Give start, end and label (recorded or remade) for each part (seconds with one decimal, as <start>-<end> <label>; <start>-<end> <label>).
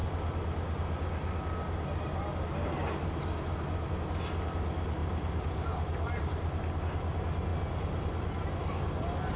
0.0-5.0 recorded; 5.0-6.8 remade; 6.8-9.4 recorded